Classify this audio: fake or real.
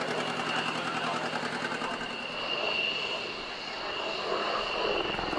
real